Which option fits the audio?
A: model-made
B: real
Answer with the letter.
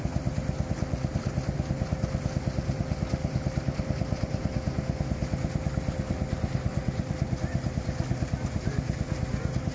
B